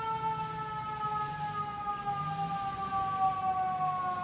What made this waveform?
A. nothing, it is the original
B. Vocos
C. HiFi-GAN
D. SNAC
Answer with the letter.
A